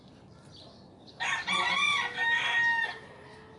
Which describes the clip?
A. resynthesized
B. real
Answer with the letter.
B